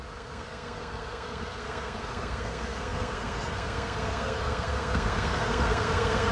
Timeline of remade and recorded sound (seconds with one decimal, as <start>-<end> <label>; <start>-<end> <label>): 0.0-6.3 remade